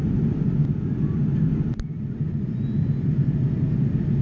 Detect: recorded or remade recorded